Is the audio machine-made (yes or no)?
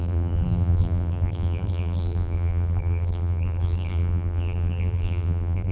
yes